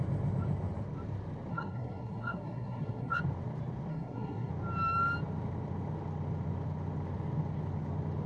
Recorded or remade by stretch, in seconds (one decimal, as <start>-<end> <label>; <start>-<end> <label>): 0.0-1.5 recorded; 1.5-3.2 remade; 3.2-3.9 recorded; 3.9-4.5 remade; 4.5-8.3 recorded

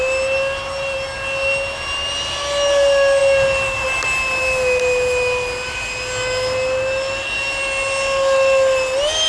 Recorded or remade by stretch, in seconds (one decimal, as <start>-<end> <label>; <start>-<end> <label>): 0.0-9.3 recorded

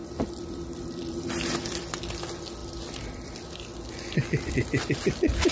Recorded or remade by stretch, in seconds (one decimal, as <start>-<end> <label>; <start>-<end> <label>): 0.0-2.0 remade; 2.0-2.6 recorded; 2.6-4.5 remade; 4.5-5.5 recorded

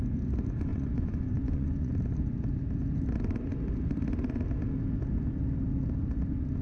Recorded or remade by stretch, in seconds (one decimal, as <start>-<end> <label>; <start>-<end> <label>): 0.0-0.7 recorded; 0.7-1.9 remade; 1.9-6.6 recorded

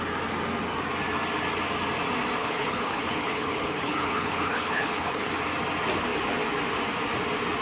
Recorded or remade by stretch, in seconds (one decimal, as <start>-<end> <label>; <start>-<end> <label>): 0.0-2.4 recorded; 2.4-5.3 remade; 5.3-7.6 recorded

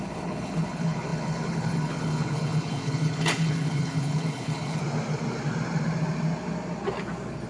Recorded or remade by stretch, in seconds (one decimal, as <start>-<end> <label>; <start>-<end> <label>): 0.0-4.8 remade; 4.8-7.5 recorded